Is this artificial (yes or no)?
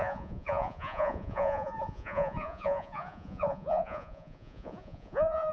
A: yes